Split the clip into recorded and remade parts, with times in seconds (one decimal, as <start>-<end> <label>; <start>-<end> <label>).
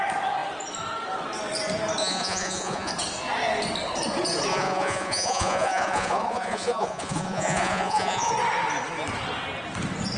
0.0-2.0 recorded; 2.0-2.9 remade; 2.9-4.5 recorded; 4.5-8.3 remade; 8.3-10.2 recorded